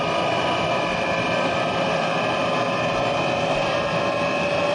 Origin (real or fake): real